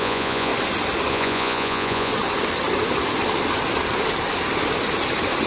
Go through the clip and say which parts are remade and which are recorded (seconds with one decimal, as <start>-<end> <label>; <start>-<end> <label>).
0.0-0.5 remade; 0.5-1.1 recorded; 1.1-2.1 remade; 2.1-5.5 recorded

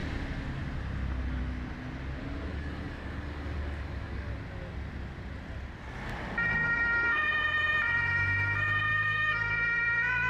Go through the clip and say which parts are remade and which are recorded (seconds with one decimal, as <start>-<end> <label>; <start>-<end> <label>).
0.0-2.5 recorded; 2.5-4.3 remade; 4.3-6.6 recorded; 6.6-7.3 remade; 7.3-8.9 recorded; 8.9-9.5 remade; 9.5-10.3 recorded

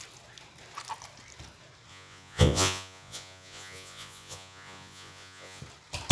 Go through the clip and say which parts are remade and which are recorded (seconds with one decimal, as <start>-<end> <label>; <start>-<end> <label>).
0.0-1.9 recorded; 1.9-5.6 remade; 5.6-6.1 recorded

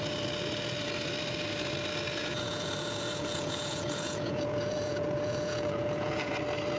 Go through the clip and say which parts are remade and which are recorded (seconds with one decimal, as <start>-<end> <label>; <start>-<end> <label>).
0.0-2.2 recorded; 2.2-6.3 remade; 6.3-6.8 recorded